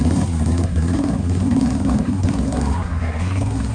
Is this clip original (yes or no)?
no